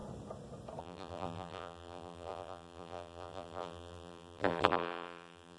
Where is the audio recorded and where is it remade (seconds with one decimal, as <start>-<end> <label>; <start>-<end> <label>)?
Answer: 0.0-0.8 recorded; 0.8-5.6 remade